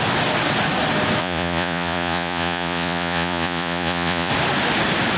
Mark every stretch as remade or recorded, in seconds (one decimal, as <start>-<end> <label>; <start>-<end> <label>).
0.0-1.2 recorded; 1.2-4.3 remade; 4.3-5.2 recorded